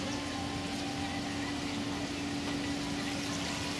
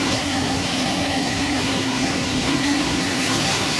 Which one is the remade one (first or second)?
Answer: second